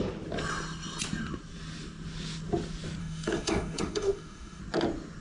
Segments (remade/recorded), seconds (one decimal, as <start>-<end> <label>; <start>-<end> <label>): 0.0-3.0 recorded; 3.0-4.6 remade; 4.6-5.2 recorded